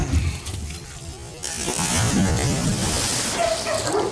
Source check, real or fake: real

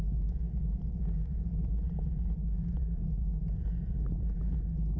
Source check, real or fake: real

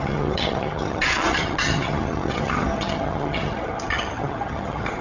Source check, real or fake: fake